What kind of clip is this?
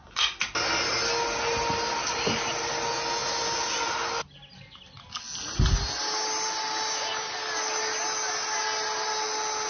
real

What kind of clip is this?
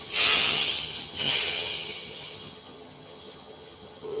fake